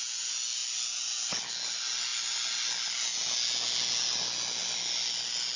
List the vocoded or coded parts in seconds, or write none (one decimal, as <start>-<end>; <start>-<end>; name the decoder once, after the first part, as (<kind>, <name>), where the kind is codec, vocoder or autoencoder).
none